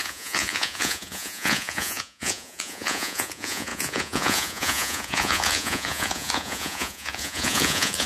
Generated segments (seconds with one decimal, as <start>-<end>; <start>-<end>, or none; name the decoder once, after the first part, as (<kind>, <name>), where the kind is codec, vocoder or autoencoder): 0.0-8.1 (vocoder, Vocos)